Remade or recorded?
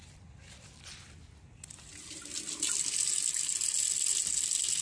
recorded